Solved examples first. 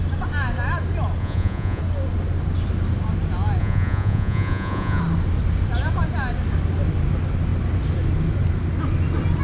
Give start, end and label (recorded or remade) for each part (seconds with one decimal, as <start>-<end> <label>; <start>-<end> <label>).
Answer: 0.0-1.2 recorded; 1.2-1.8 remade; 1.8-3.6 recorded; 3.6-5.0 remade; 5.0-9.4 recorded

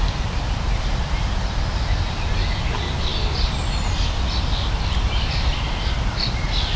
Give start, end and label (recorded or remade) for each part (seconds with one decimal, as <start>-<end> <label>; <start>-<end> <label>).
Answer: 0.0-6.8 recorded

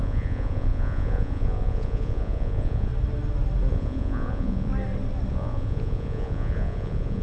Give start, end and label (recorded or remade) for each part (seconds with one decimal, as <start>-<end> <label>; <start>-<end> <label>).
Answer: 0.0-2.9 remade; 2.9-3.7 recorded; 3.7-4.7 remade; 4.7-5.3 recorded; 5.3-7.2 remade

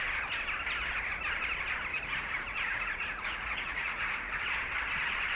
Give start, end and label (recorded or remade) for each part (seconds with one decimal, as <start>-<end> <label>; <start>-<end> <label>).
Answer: 0.0-1.9 recorded; 1.9-4.4 remade; 4.4-5.4 recorded

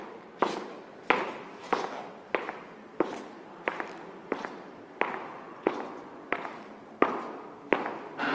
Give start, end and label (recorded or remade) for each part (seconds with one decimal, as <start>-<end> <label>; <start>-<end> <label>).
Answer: 0.0-5.3 recorded; 5.3-6.2 remade; 6.2-8.3 recorded

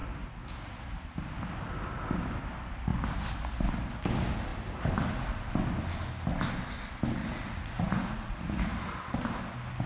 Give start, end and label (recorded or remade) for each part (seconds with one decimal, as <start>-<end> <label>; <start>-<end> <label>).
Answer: 0.0-7.2 recorded; 7.2-8.6 remade; 8.6-9.9 recorded